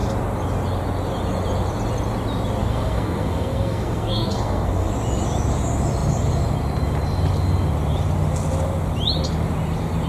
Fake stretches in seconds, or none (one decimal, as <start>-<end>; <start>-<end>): 2.6-4.9